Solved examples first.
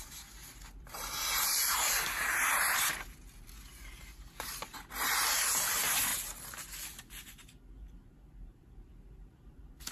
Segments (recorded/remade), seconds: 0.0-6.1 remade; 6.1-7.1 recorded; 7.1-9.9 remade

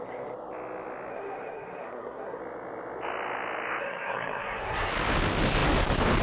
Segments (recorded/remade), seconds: 0.0-1.1 recorded; 1.1-2.4 remade; 2.4-3.8 recorded; 3.8-4.9 remade; 4.9-6.2 recorded

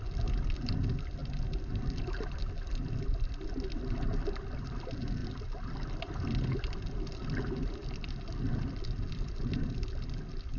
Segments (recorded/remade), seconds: 0.0-10.6 recorded